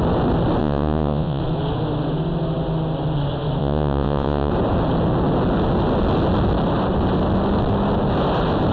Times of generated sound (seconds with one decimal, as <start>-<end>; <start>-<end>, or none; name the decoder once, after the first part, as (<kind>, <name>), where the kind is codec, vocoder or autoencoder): 0.6-1.4 (vocoder, Vocos); 3.6-4.5